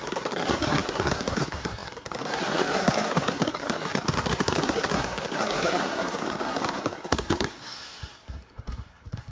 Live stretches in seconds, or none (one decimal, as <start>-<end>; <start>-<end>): none